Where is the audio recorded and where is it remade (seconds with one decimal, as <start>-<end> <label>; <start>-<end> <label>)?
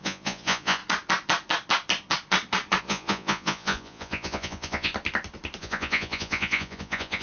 0.0-0.8 remade; 0.8-2.8 recorded; 2.8-4.9 remade; 4.9-5.6 recorded; 5.6-7.2 remade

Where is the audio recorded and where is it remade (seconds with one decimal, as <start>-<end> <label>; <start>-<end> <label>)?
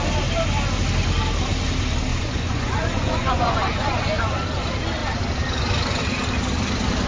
0.0-2.1 recorded; 2.1-4.2 remade; 4.2-7.1 recorded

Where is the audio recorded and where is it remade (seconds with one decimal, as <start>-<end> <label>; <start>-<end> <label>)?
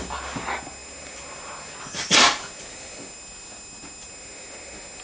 0.0-5.0 recorded